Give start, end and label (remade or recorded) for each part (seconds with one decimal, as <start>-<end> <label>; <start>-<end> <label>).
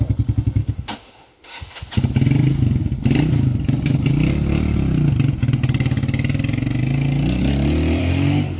0.0-0.6 recorded; 0.6-1.9 remade; 1.9-8.0 recorded; 8.0-8.6 remade